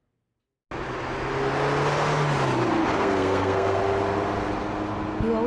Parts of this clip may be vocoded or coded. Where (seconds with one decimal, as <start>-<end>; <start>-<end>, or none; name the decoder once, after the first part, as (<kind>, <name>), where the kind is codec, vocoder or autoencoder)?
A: 3.0-3.8 (codec, SNAC)